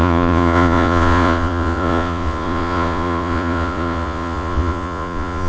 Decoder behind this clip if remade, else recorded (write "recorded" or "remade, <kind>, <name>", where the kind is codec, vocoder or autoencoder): remade, vocoder, Vocos